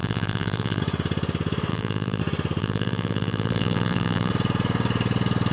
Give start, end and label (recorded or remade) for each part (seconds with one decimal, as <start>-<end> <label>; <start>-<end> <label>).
0.0-0.8 remade; 0.8-1.7 recorded; 1.7-2.2 remade; 2.2-2.6 recorded; 2.6-4.3 remade; 4.3-5.5 recorded